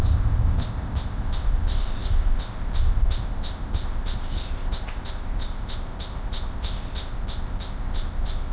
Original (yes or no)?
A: no